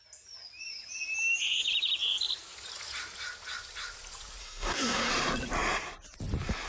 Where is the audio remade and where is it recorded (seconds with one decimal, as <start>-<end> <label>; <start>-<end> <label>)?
0.0-4.4 recorded; 4.4-5.1 remade; 5.1-6.7 recorded